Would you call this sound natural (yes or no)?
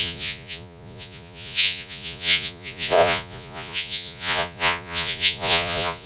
no